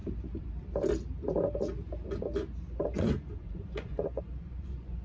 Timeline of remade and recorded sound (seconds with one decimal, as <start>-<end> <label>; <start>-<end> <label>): 0.0-2.8 recorded; 2.8-5.0 remade